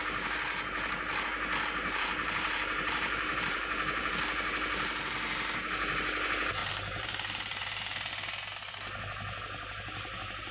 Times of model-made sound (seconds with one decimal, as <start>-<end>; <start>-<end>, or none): 1.8-4.1; 6.6-8.1